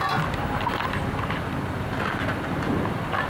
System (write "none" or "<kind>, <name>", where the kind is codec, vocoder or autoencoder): none